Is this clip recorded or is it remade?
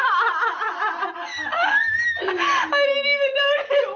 recorded